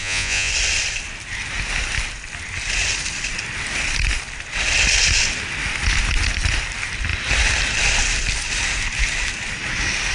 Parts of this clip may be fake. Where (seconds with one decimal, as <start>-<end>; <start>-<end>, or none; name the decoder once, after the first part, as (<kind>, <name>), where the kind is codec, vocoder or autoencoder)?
0.0-0.5 (vocoder, Vocos)